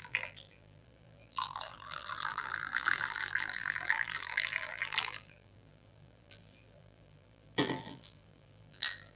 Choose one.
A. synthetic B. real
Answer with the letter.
A